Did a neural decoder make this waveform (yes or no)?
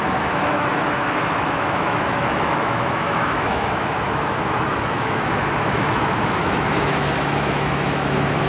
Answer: yes